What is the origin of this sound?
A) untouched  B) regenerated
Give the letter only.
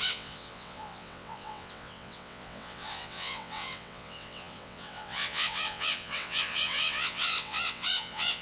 B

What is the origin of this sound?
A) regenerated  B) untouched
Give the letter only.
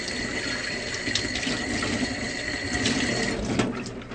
B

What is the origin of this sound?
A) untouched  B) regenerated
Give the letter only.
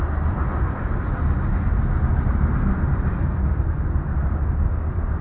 A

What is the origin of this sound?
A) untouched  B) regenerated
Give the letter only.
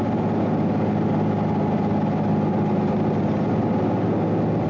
A